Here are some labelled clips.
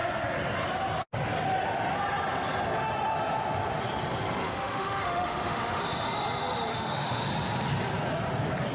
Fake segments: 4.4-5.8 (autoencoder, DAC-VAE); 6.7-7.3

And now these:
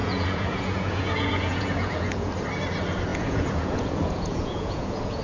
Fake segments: 0.0-2.3 (vocoder, Vocos); 3.1-5.2

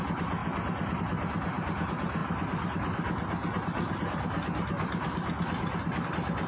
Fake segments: none

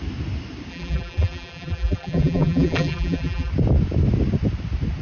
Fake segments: 0.7-3.5 (vocoder, BigVGAN v2)

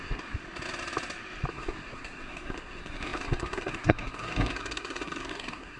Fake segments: 0.0-0.4 (codec, SNAC); 1.5-5.8

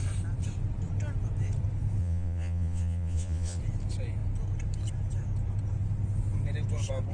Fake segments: 2.0-3.6 (vocoder, Vocos)